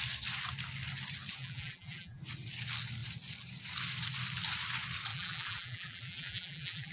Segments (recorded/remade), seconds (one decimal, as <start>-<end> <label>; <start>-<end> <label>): 0.0-1.4 recorded; 1.4-2.2 remade; 2.2-5.1 recorded; 5.1-6.9 remade

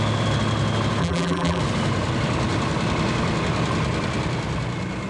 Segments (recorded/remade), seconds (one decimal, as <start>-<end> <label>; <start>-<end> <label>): 0.0-1.0 recorded; 1.0-1.6 remade; 1.6-5.1 recorded

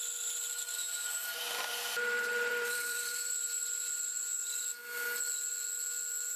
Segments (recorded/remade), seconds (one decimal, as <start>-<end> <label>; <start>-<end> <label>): 0.0-0.8 recorded; 0.8-4.6 remade; 4.6-6.4 recorded

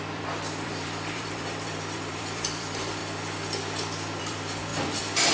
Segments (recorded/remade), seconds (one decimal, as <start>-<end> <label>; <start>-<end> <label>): 0.0-3.0 remade; 3.0-4.2 recorded; 4.2-5.3 remade

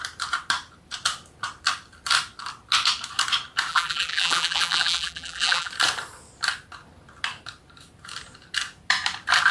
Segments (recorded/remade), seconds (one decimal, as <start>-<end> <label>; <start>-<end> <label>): 0.0-3.7 recorded; 3.7-5.7 remade; 5.7-9.5 recorded

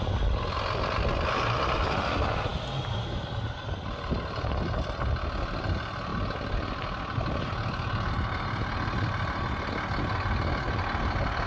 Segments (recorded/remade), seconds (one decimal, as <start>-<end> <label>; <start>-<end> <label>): 0.0-6.1 recorded; 6.1-8.1 remade; 8.1-11.5 recorded

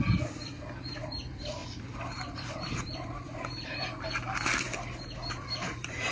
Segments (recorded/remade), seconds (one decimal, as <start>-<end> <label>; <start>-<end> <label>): 0.0-6.1 remade

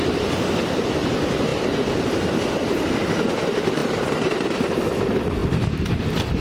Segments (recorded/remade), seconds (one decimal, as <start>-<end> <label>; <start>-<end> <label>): 0.0-6.4 recorded